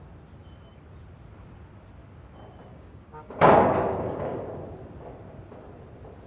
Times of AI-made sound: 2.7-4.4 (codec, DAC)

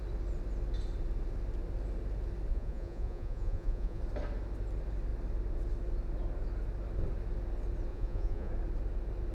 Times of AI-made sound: 2.5-4.0 (vocoder, Vocos); 7.9-8.5

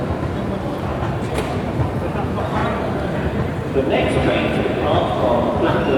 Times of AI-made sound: 0.9-1.5 (vocoder, BigVGAN v2); 2.6-5.5